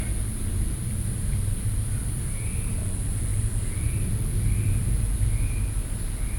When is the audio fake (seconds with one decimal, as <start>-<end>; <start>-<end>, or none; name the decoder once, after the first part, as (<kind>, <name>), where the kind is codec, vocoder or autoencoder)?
none